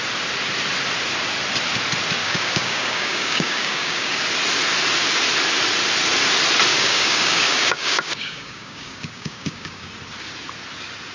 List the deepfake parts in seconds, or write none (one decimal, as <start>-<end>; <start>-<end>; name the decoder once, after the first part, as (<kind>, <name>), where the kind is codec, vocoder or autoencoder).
2.2-4.2 (codec, DAC); 6.7-9.9